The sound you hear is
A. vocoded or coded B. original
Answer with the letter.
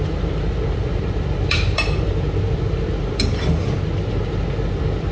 B